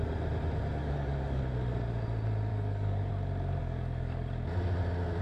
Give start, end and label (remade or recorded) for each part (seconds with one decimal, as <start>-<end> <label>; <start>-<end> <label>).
0.0-0.8 recorded; 0.8-1.4 remade; 1.4-2.5 recorded; 2.5-3.1 remade; 3.1-3.6 recorded; 3.6-4.3 remade; 4.3-5.2 recorded